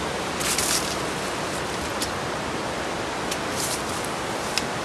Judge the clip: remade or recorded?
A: recorded